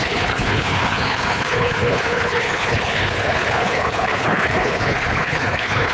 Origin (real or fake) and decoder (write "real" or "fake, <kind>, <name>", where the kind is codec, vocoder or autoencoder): fake, codec, HILCodec